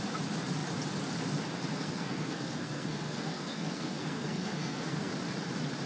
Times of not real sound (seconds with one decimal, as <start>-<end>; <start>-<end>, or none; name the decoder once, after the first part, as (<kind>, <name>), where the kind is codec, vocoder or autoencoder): 1.7-5.1 (codec, SNAC)